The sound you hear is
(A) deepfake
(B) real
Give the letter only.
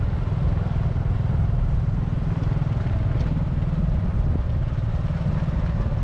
B